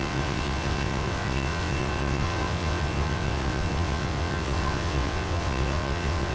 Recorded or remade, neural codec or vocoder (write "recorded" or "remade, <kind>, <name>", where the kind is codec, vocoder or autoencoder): remade, vocoder, WaveNeXt